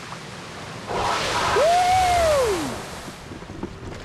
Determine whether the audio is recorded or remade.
recorded